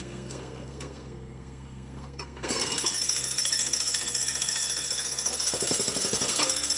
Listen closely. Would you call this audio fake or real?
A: fake